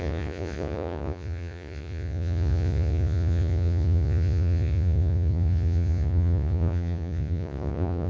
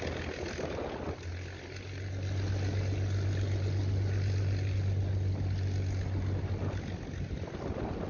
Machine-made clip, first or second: first